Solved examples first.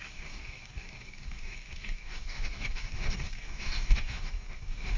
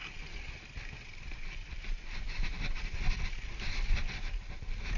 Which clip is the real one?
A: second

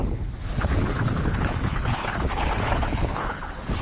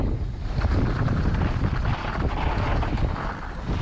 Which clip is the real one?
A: second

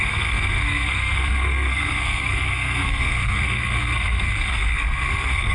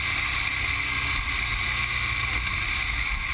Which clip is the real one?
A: second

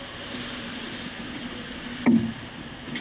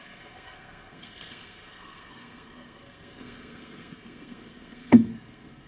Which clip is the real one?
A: first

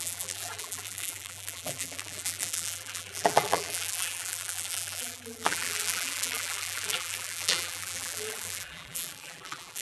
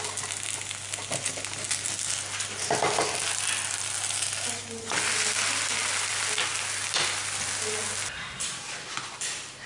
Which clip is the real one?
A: second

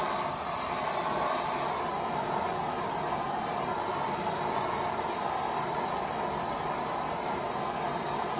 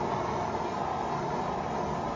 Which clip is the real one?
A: second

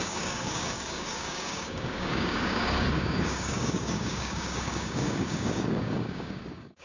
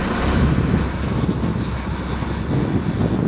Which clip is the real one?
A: second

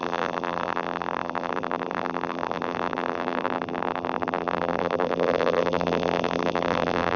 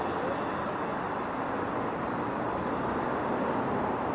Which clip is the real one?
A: second